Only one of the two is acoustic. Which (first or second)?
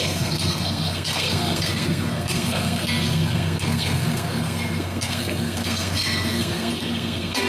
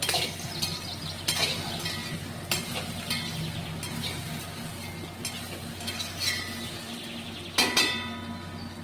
second